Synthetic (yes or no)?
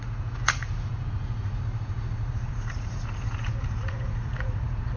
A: yes